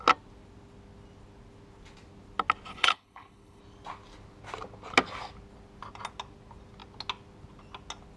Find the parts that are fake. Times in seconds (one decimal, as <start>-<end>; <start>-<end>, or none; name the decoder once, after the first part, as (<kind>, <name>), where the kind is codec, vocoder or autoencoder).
2.7-3.6 (codec, HILCodec)